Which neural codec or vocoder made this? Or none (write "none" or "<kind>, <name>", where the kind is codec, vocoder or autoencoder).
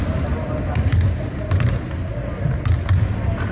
none